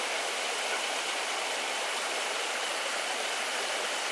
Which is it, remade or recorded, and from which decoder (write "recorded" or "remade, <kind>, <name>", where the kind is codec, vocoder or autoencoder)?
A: recorded